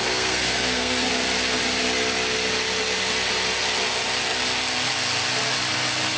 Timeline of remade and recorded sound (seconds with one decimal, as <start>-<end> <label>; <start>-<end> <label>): 0.0-1.1 remade; 1.1-6.2 recorded